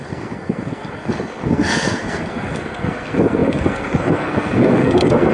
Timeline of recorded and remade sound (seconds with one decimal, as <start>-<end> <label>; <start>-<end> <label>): 0.0-5.3 remade